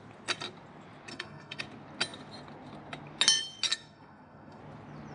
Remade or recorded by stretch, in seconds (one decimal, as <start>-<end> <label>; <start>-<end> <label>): 0.0-1.1 recorded; 1.1-1.6 remade; 1.6-3.7 recorded; 3.7-4.6 remade; 4.6-5.1 recorded